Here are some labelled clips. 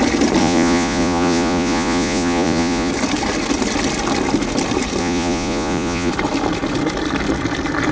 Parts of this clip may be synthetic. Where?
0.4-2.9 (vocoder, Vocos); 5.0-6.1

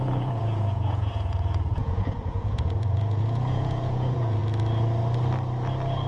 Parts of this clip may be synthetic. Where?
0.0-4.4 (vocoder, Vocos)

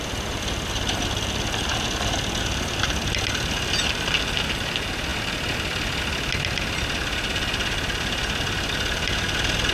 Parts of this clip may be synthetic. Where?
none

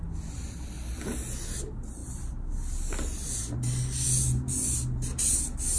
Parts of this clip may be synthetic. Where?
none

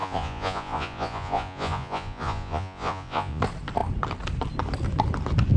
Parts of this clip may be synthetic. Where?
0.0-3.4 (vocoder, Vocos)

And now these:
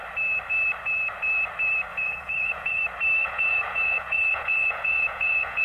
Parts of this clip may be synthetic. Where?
1.9-2.8 (vocoder, Vocos); 3.2-5.6

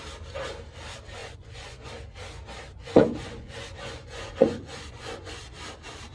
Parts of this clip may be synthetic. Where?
1.2-1.9 (vocoder, Vocos); 2.8-5.4